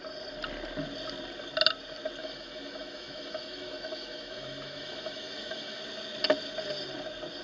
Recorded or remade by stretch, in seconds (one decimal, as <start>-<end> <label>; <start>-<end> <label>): 0.0-2.2 recorded; 2.2-5.8 remade; 5.8-7.4 recorded